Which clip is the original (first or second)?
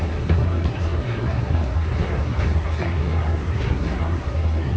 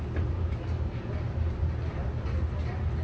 second